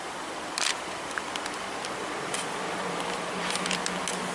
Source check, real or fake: real